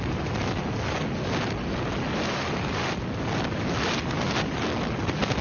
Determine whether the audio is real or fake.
real